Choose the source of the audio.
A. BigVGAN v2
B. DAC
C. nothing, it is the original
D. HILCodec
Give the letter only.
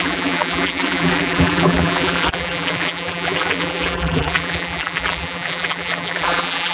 A